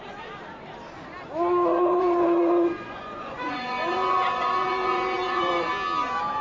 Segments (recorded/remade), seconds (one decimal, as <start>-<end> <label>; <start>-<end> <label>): 0.0-1.9 recorded; 1.9-5.7 remade; 5.7-6.4 recorded